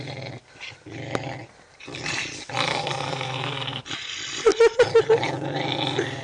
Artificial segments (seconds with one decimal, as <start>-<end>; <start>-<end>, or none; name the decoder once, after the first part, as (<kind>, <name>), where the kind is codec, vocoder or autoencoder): 2.7-3.8 (codec, SNAC)